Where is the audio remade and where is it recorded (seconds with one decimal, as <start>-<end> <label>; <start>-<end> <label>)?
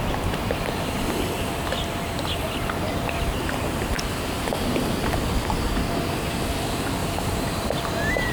0.0-7.0 recorded; 7.0-8.3 remade